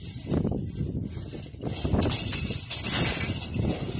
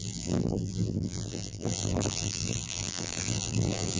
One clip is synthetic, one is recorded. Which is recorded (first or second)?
first